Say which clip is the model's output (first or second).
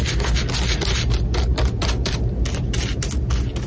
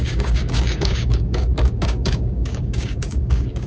second